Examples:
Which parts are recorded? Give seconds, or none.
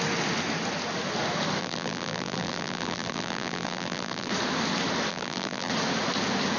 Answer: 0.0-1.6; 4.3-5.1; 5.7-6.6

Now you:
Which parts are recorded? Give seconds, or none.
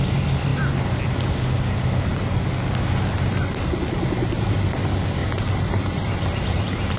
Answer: 0.0-7.0